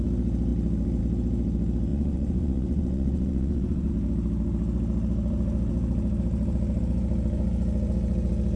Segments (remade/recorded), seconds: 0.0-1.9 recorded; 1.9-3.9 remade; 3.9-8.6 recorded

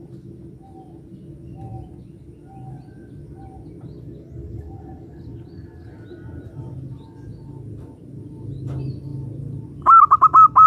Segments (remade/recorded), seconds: 0.0-10.7 recorded

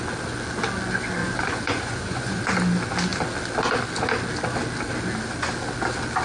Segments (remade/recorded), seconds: 0.0-1.2 recorded; 1.2-2.4 remade; 2.4-6.2 recorded

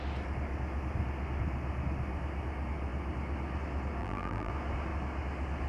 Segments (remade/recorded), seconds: 0.0-4.0 recorded; 4.0-4.5 remade; 4.5-5.7 recorded

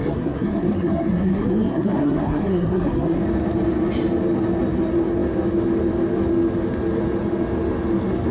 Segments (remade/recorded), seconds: 0.0-3.2 remade; 3.2-8.3 recorded

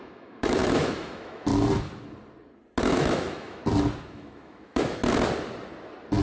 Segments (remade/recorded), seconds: 0.0-1.5 remade; 1.5-2.8 recorded; 2.8-3.6 remade; 3.6-4.1 recorded; 4.1-5.0 remade; 5.0-6.2 recorded

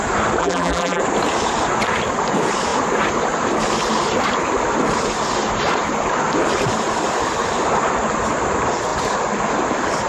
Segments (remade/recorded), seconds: 0.0-0.4 recorded; 0.4-1.0 remade; 1.0-10.1 recorded